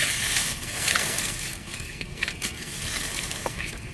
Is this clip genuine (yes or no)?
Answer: no